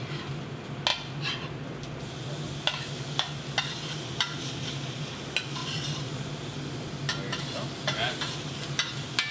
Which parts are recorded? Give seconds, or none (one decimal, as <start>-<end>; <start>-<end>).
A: 0.0-9.3